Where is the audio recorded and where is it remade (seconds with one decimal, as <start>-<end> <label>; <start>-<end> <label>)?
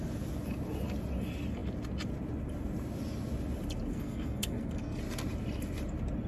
0.0-3.9 recorded; 3.9-5.0 remade; 5.0-6.3 recorded